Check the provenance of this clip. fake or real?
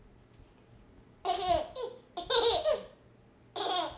real